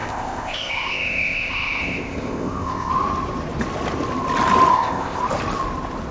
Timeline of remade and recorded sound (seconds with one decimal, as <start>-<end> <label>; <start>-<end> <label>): 0.0-2.9 remade; 2.9-4.7 recorded; 4.7-5.2 remade; 5.2-6.1 recorded